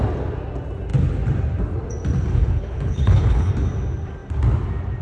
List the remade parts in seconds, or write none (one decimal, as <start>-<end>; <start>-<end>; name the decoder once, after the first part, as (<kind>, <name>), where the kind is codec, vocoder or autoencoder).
2.3-3.5 (codec, HILCodec)